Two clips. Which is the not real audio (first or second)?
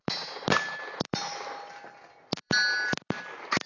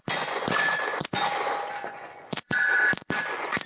second